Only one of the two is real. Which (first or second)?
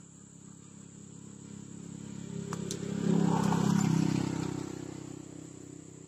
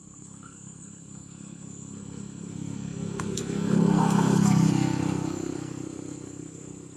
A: first